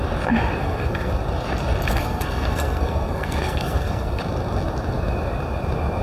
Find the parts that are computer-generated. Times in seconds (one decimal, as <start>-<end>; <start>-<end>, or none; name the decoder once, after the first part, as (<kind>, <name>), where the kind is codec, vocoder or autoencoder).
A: 0.6-1.1 (codec, SNAC); 1.9-4.2